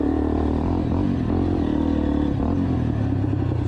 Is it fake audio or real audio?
real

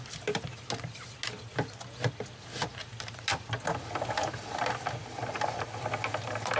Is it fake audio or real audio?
real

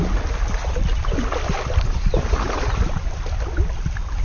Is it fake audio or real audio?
real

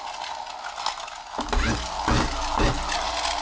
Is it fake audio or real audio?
real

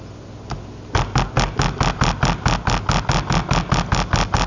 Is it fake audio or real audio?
real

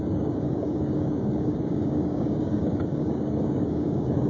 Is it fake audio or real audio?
fake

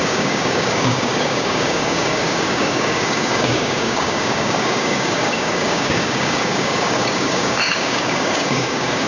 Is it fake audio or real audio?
fake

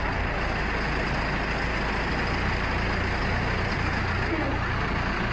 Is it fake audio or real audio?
real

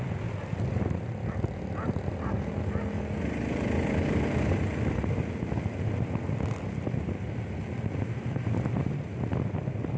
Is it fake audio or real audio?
real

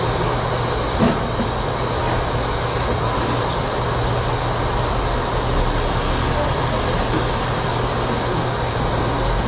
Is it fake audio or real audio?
real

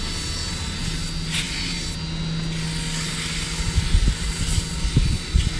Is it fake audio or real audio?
real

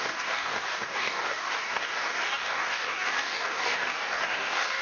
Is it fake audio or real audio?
fake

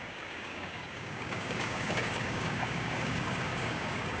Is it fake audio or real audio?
fake